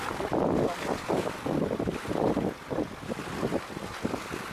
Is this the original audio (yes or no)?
yes